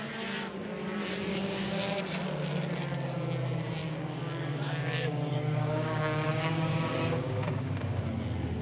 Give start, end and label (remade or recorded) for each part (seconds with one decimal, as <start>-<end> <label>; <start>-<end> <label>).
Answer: 0.0-1.3 recorded; 1.3-2.0 remade; 2.0-3.8 recorded; 3.8-8.0 remade; 8.0-8.6 recorded